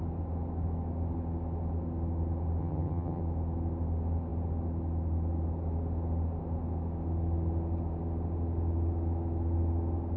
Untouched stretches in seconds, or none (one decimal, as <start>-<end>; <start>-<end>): 0.0-2.6; 3.2-10.2